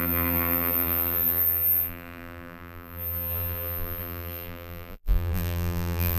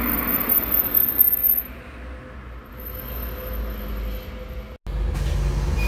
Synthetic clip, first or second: first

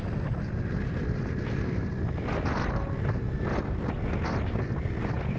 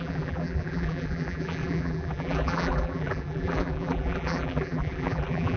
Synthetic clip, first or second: second